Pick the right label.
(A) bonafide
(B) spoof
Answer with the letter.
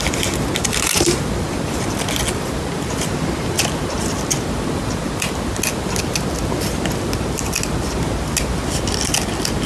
A